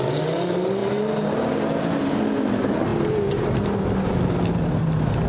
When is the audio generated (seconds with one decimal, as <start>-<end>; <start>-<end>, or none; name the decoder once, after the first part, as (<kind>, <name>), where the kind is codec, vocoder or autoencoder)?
none